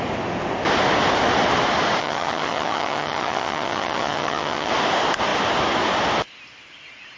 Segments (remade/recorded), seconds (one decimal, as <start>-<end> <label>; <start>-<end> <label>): 0.0-2.0 recorded; 2.0-4.7 remade; 4.7-7.2 recorded